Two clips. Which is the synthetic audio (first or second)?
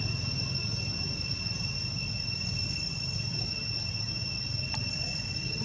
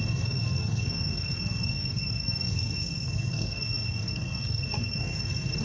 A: second